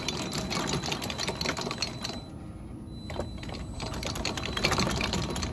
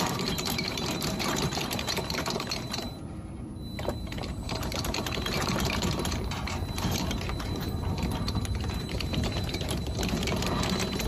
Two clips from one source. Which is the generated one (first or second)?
second